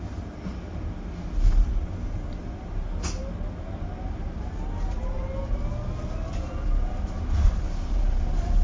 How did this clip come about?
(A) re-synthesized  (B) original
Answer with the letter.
B